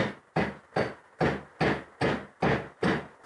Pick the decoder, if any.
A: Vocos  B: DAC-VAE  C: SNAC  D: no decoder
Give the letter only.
D